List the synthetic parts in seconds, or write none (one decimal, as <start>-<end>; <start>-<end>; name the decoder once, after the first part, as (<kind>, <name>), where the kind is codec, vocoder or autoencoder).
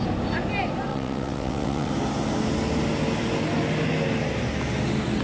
0.9-1.9 (vocoder, WaveNeXt)